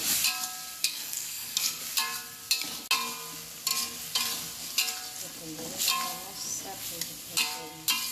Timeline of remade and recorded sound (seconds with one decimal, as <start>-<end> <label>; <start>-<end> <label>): 0.0-0.8 recorded; 0.8-1.8 remade; 1.8-8.1 recorded